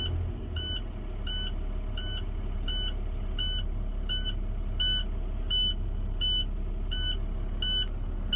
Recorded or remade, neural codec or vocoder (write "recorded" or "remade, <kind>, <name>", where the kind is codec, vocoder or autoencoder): recorded